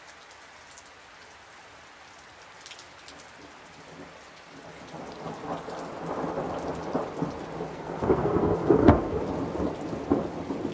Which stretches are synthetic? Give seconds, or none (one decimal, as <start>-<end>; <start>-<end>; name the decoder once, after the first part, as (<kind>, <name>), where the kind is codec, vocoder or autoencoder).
7.7-9.2 (codec, SNAC)